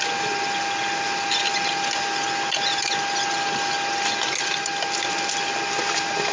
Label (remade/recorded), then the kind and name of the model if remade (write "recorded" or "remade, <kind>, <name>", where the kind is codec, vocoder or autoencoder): recorded